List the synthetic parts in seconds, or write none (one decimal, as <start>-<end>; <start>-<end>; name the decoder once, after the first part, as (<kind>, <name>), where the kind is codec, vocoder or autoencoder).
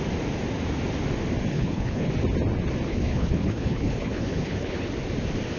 1.5-2.1 (codec, HILCodec); 2.9-4.9